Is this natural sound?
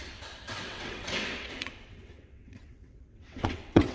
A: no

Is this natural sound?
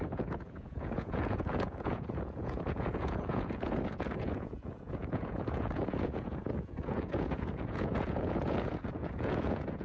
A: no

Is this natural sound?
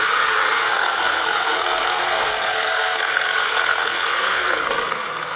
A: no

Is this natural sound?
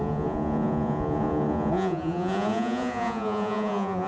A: no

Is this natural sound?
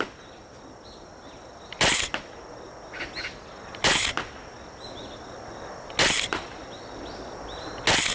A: yes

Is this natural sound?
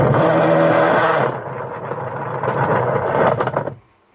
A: yes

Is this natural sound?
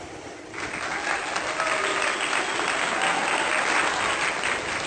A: yes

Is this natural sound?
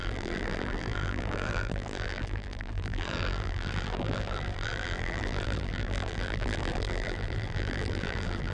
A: no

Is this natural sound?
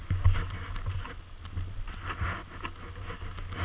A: yes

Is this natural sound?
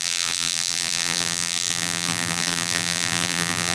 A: no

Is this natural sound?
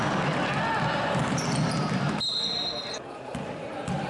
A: yes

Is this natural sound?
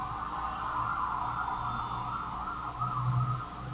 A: yes